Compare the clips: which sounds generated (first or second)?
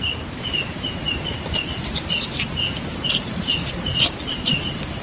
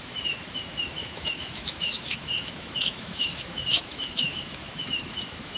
second